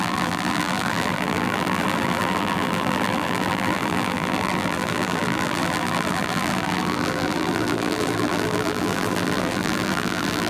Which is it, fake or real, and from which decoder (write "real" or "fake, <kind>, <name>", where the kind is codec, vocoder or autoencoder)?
fake, vocoder, BigVGAN v2